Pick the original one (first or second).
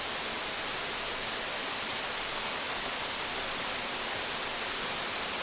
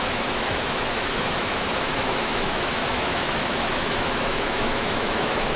first